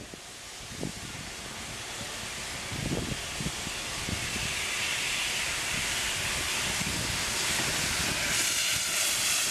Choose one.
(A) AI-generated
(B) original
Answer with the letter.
B